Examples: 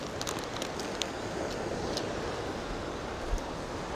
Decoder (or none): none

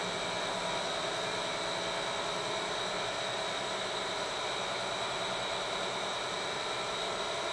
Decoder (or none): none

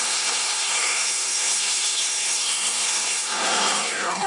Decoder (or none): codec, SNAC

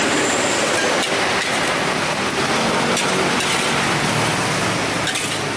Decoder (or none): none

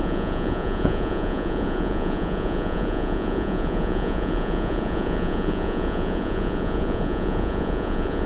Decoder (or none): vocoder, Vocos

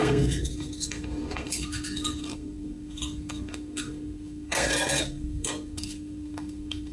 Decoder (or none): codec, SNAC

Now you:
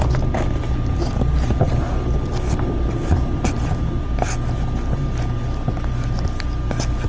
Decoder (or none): none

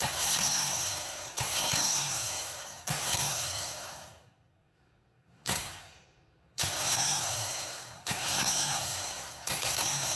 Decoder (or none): codec, SNAC